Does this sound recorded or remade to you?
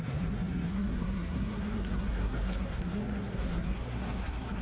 remade